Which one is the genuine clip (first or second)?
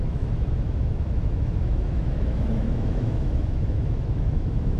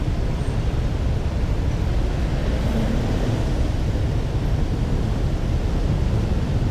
second